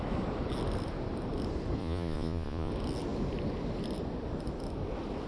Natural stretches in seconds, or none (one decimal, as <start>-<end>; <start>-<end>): 0.0-1.8; 2.7-5.3